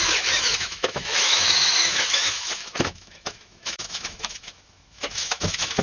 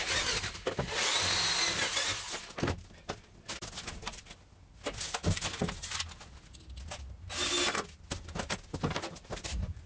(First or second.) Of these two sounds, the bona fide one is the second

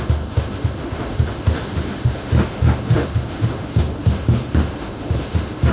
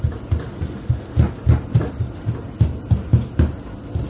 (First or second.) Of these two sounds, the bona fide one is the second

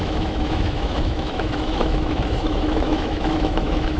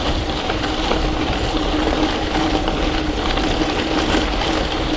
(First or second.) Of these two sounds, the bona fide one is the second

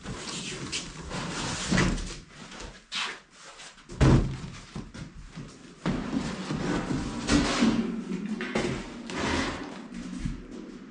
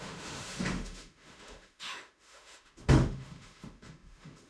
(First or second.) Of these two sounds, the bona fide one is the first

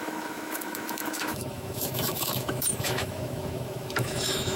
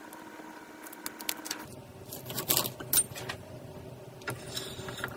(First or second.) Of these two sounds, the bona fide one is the second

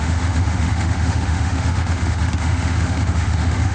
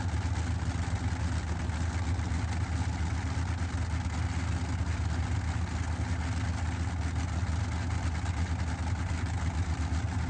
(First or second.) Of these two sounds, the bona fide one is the second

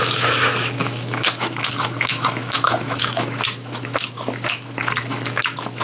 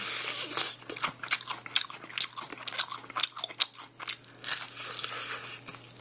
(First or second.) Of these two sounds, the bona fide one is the second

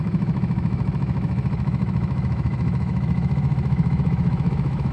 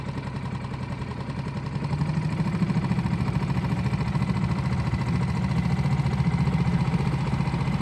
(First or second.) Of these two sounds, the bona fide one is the second